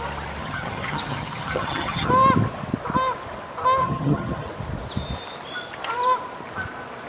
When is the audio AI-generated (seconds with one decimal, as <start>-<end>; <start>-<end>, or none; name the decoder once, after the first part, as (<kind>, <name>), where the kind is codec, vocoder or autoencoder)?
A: 0.4-2.1 (vocoder, HiFi-GAN); 3.8-4.5